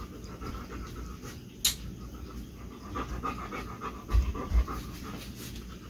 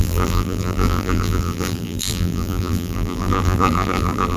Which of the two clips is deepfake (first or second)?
second